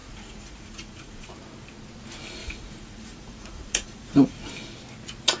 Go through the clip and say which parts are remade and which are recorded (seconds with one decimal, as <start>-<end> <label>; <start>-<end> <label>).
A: 0.0-1.3 remade; 1.3-2.4 recorded; 2.4-4.5 remade; 4.5-5.4 recorded